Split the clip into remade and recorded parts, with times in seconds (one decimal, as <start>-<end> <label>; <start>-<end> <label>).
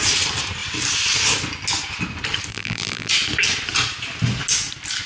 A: 0.0-2.5 recorded; 2.5-3.1 remade; 3.1-5.1 recorded